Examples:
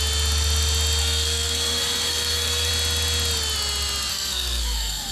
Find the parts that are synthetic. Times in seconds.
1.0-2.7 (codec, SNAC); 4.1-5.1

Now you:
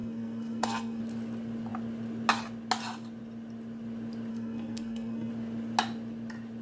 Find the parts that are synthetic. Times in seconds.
0.0-1.0 (codec, SNAC); 4.3-5.3

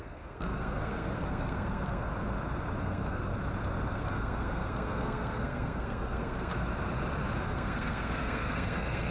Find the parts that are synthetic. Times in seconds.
0.0-2.1 (codec, SNAC); 2.8-3.3; 3.9-6.5; 7.4-9.1

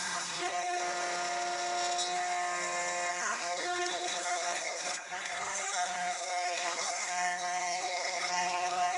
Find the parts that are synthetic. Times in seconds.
0.0-0.8 (codec, SNAC); 3.1-9.0

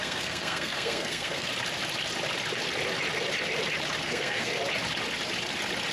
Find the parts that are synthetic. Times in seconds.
0.0-1.5 (codec, SNAC); 4.0-4.5